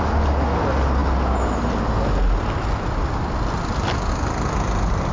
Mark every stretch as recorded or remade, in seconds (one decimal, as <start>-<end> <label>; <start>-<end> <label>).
0.0-5.1 recorded